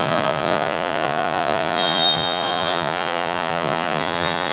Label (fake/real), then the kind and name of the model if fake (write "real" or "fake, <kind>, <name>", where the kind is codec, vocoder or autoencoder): fake, vocoder, Vocos